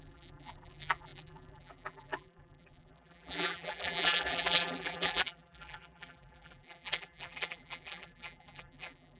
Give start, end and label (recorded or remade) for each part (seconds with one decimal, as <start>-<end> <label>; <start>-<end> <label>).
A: 0.0-9.2 remade